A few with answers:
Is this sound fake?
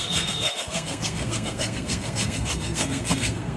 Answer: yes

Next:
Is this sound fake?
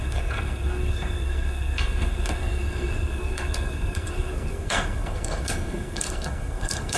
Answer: yes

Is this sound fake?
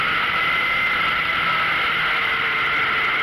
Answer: no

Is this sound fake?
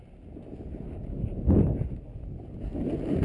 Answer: no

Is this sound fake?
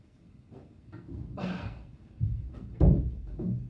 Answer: yes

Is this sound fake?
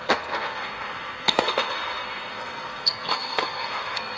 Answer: yes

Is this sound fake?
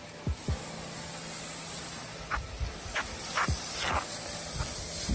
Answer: no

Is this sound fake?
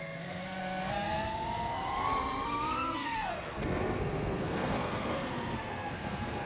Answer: yes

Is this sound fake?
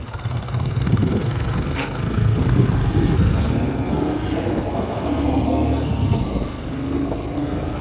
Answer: yes